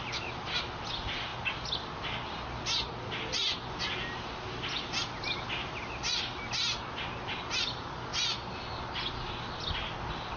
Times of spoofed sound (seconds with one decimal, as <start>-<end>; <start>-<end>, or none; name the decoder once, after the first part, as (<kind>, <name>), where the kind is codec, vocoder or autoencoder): none